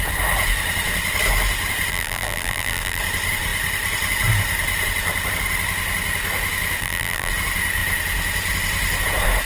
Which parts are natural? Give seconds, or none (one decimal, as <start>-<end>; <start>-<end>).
0.0-1.9; 3.0-6.8; 7.3-9.5